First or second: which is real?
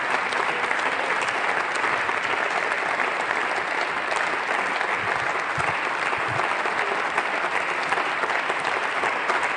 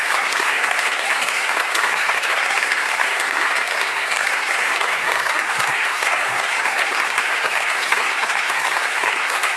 first